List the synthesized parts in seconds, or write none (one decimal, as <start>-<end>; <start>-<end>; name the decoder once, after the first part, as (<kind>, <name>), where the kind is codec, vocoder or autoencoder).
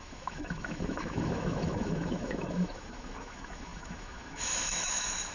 0.0-5.3 (autoencoder, DAC-VAE)